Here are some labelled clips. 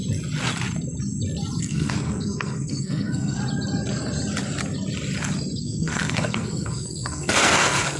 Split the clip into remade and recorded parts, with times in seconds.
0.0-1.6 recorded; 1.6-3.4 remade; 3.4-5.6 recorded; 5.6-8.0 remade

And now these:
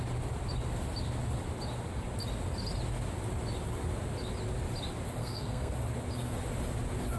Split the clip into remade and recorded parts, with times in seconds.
0.0-5.2 recorded; 5.2-5.7 remade; 5.7-7.2 recorded

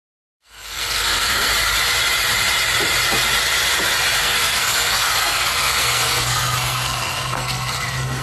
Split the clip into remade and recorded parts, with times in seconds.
0.0-1.5 remade; 1.5-4.2 recorded; 4.2-8.2 remade